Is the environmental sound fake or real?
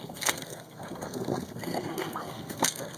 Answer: fake